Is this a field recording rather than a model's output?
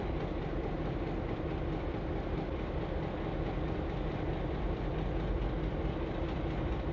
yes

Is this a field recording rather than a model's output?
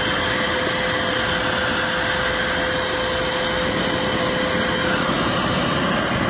yes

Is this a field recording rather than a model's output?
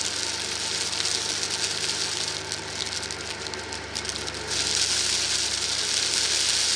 yes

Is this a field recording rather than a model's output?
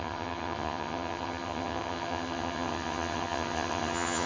no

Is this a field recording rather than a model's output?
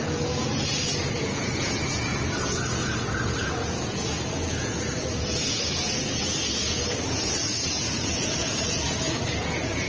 no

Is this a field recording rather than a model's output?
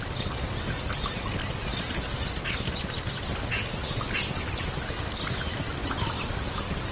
yes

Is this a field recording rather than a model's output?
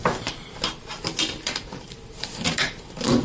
no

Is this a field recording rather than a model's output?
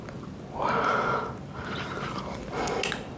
yes